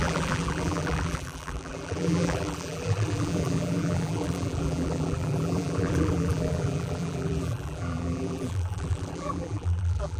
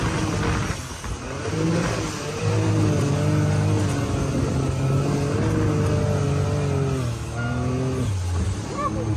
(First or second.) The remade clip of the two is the first